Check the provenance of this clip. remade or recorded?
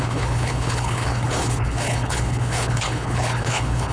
remade